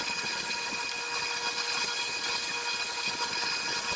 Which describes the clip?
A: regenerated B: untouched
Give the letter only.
B